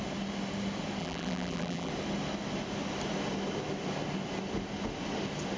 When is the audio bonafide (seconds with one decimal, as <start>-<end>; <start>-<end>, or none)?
0.0-1.0; 1.9-5.6

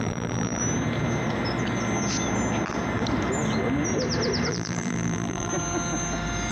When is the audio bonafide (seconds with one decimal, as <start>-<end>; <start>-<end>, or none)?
0.6-4.5; 5.5-6.5

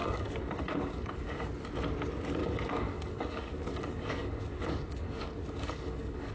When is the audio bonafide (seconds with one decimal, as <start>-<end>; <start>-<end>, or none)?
1.5-2.4

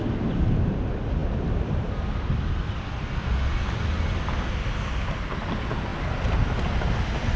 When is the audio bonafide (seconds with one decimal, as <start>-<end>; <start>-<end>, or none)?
0.0-7.4

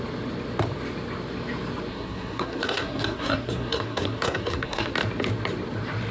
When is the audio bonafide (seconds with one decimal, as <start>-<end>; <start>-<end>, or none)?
0.0-1.9; 4.9-6.1

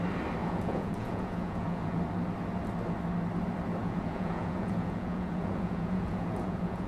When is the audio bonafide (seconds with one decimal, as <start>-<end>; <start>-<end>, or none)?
0.0-0.4; 2.0-3.8